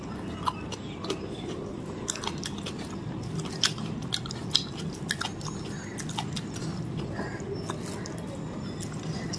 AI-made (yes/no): no